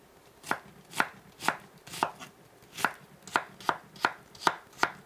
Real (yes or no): yes